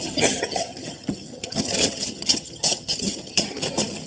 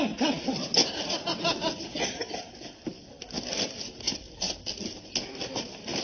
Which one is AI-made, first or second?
first